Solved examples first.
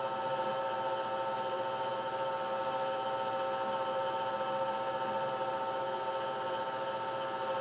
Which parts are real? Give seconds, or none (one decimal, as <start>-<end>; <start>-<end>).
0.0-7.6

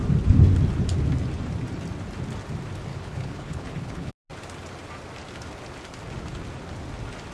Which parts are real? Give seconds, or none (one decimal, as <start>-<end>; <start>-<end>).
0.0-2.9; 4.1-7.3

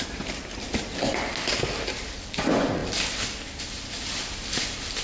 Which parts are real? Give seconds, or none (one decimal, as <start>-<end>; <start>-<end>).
0.0-5.0

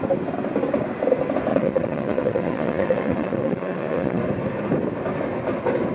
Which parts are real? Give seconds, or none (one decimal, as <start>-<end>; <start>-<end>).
0.0-1.5; 4.2-5.9

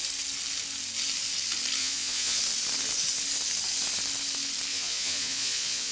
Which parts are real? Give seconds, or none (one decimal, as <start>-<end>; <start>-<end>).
0.0-1.8; 2.4-4.7